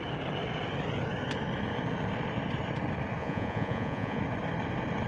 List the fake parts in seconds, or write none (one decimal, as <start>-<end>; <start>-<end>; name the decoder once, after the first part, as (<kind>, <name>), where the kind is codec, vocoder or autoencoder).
3.2-4.2 (vocoder, Vocos)